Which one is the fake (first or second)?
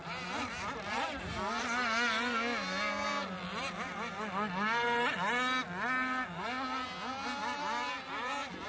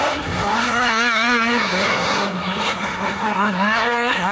second